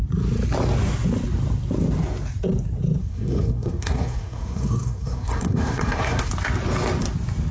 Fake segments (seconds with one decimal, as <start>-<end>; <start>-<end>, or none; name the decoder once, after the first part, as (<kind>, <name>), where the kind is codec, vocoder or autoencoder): 3.0-6.3 (codec, SNAC)